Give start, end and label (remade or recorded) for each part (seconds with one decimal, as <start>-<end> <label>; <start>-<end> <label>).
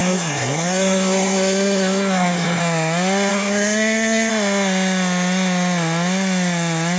0.0-2.6 remade; 2.6-3.3 recorded; 3.3-4.3 remade; 4.3-7.0 recorded